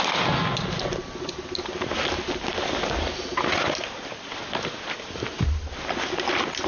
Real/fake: real